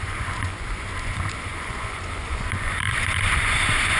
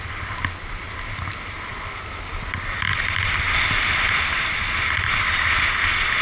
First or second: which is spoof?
first